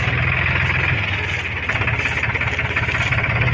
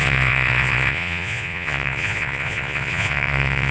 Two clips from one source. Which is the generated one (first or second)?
second